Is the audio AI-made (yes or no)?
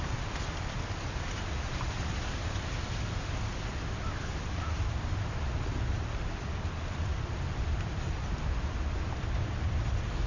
no